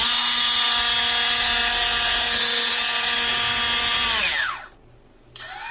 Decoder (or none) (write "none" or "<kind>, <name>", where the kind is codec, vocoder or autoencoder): none